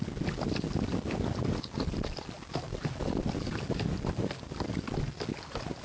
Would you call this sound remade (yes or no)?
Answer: no